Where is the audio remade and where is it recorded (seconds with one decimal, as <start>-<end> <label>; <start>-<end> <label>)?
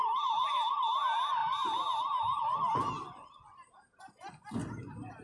0.0-0.7 remade; 0.7-5.2 recorded